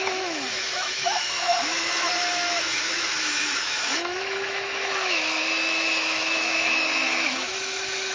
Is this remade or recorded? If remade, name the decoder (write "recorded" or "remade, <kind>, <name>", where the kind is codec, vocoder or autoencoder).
remade, autoencoder, DAC-VAE